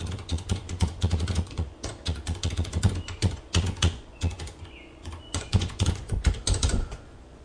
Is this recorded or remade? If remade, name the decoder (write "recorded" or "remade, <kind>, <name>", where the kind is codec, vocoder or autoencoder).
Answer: remade, vocoder, Vocos